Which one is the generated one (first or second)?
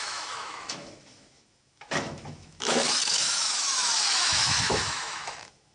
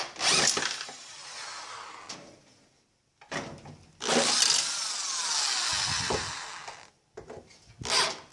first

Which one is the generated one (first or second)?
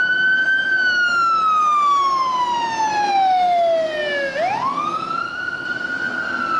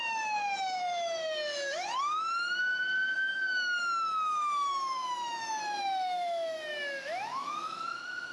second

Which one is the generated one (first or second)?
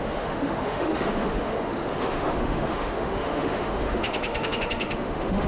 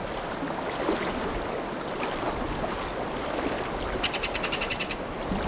first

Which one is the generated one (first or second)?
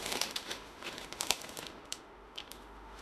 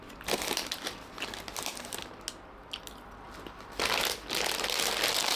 first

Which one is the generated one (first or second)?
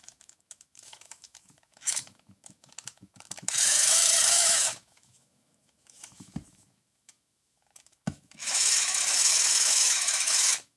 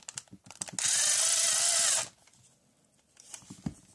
first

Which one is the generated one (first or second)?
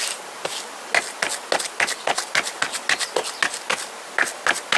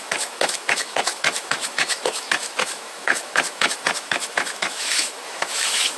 second